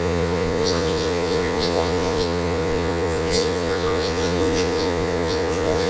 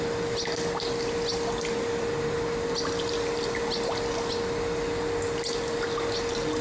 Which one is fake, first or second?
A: first